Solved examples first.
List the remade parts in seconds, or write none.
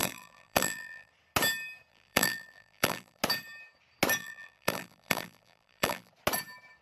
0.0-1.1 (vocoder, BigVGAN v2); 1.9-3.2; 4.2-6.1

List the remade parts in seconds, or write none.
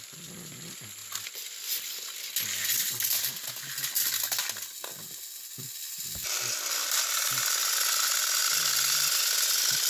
none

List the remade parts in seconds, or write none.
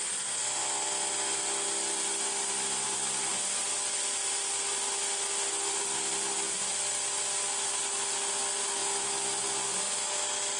none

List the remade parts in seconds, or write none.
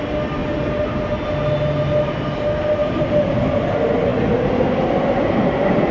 0.4-1.3 (vocoder, BigVGAN v2); 2.8-3.4